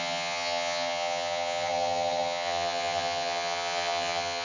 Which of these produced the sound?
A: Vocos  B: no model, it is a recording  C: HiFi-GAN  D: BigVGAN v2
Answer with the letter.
C